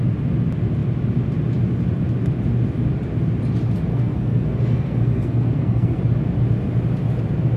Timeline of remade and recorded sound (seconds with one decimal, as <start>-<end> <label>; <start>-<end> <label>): 0.0-3.9 recorded; 3.9-6.0 remade; 6.0-7.6 recorded